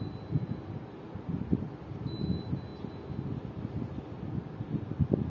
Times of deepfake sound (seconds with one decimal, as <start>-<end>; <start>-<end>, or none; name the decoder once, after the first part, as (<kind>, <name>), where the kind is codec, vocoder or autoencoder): none